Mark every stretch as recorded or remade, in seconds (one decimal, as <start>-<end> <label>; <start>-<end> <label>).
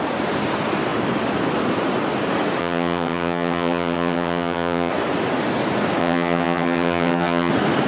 0.0-2.6 recorded; 2.6-4.9 remade; 4.9-6.0 recorded; 6.0-7.5 remade; 7.5-7.9 recorded